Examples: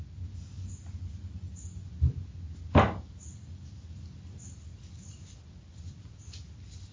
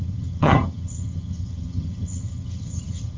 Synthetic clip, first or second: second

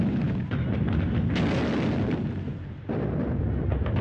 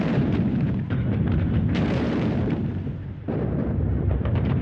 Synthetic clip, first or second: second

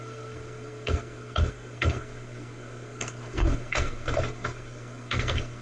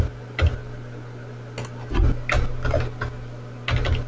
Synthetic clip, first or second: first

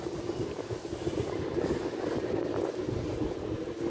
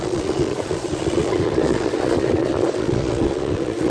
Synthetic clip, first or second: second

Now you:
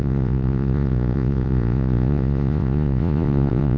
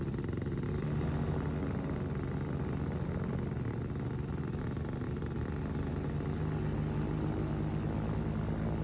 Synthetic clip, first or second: first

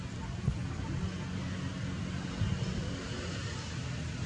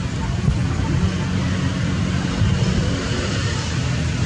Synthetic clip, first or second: second